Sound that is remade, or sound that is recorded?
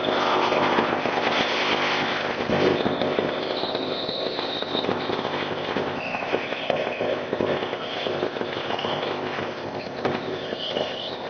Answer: remade